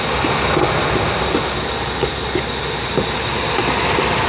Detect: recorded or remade recorded